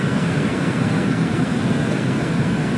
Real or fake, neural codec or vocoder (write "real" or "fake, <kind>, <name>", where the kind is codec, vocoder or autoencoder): fake, codec, SNAC